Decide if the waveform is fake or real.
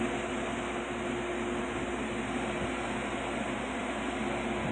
real